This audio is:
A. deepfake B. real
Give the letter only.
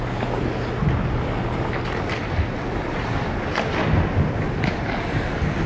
B